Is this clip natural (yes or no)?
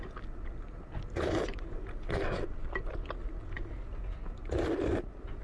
yes